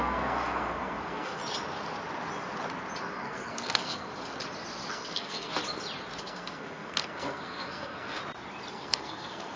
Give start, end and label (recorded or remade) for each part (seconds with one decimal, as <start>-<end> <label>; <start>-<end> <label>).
0.0-1.4 remade; 1.4-3.0 recorded; 3.0-4.1 remade; 4.1-4.9 recorded; 4.9-5.5 remade; 5.5-6.2 recorded; 6.2-8.2 remade; 8.2-8.7 recorded; 8.7-9.6 remade